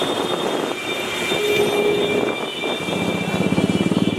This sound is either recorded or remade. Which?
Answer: recorded